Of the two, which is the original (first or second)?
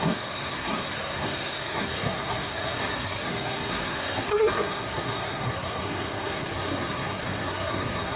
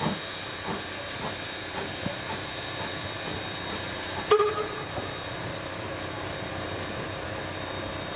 second